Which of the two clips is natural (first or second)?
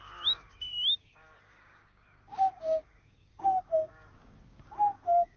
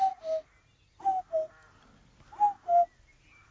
second